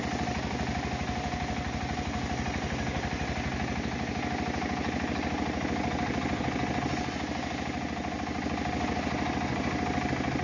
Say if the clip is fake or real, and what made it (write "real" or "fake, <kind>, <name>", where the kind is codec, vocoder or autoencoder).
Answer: real